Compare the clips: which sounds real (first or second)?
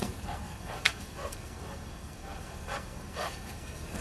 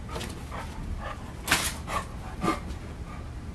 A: second